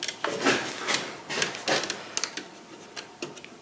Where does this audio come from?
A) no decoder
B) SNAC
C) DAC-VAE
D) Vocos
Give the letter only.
A